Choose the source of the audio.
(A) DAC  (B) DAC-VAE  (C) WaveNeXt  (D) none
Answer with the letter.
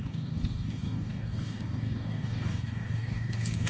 A